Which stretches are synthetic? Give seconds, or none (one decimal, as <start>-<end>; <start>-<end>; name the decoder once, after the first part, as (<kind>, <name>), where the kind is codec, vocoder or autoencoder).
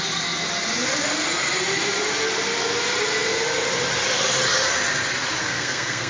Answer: 5.4-6.1 (codec, SNAC)